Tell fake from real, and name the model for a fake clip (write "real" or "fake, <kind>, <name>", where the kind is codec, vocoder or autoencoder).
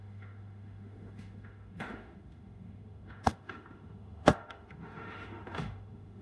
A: fake, autoencoder, DAC-VAE